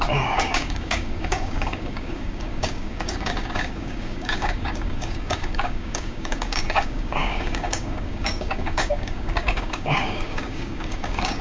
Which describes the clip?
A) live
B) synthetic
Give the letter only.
B